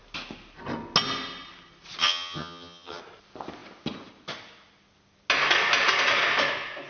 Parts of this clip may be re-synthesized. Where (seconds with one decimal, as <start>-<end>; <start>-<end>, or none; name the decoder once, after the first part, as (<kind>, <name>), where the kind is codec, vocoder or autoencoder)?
2.0-3.0 (vocoder, HiFi-GAN)